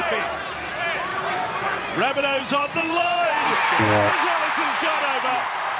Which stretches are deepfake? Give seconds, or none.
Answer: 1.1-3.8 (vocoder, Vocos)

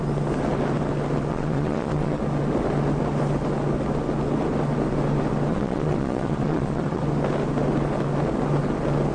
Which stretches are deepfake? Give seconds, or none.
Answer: 1.3-2.2 (vocoder, Vocos); 5.5-7.0